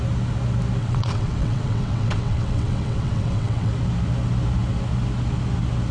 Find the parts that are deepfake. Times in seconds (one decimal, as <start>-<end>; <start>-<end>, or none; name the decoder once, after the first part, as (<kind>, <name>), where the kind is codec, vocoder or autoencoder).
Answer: 0.8-3.7 (vocoder, WaveNeXt)